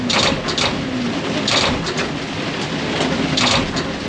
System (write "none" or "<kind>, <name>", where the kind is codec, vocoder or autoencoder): none